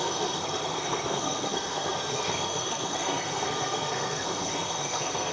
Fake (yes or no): yes